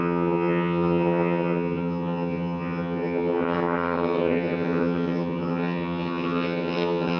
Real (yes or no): no